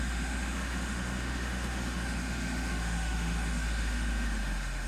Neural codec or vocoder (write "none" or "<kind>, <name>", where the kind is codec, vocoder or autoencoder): autoencoder, DAC-VAE